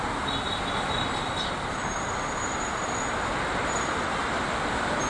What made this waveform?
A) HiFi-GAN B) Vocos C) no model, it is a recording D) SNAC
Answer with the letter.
C